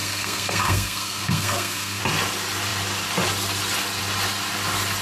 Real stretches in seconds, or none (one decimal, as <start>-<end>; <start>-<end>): 2.0-5.0